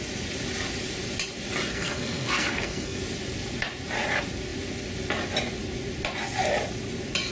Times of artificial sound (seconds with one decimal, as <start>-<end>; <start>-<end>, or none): 1.7-3.0